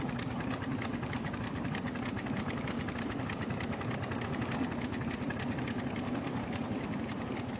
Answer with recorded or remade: recorded